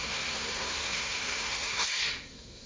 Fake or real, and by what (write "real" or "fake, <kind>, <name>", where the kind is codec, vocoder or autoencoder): fake, codec, SNAC